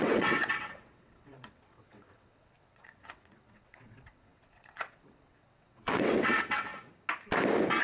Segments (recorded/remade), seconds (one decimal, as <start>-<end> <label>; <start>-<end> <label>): 0.0-6.7 remade; 6.7-7.8 recorded